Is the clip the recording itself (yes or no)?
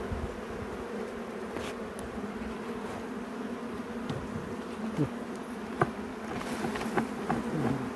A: yes